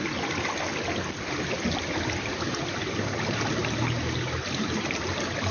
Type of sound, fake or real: real